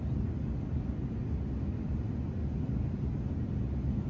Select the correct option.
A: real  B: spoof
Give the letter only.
A